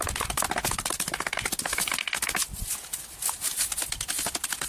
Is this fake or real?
real